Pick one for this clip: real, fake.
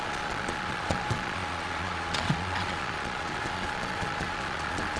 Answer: fake